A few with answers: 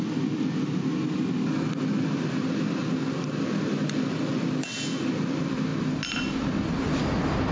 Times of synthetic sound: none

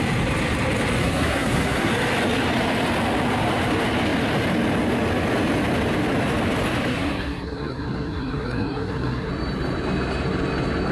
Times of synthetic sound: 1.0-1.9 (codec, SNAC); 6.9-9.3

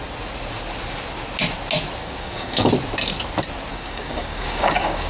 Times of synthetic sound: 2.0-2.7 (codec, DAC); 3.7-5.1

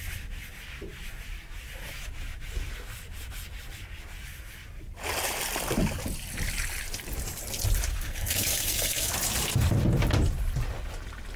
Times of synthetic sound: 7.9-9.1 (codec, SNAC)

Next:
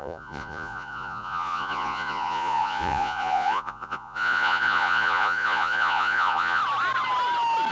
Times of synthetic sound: 0.0-6.6 (vocoder, Vocos)